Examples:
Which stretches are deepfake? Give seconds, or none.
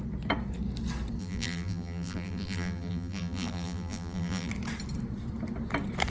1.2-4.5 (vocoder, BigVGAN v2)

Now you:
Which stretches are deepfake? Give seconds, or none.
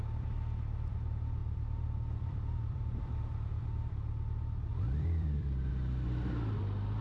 1.4-3.9 (vocoder, BigVGAN v2); 4.7-5.7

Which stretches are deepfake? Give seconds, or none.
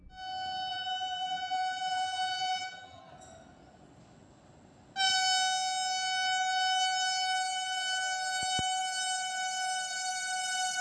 0.7-3.0 (vocoder, BigVGAN v2)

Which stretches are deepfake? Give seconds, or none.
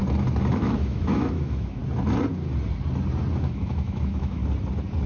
0.5-1.8 (autoencoder, DAC-VAE); 3.4-4.4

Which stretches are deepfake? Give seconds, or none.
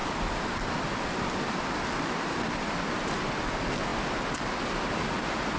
none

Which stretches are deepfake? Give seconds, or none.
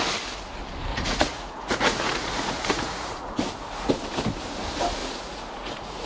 0.9-3.9 (vocoder, Vocos); 5.0-6.1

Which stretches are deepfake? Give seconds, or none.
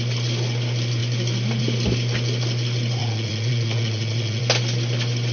3.0-4.4 (vocoder, Vocos)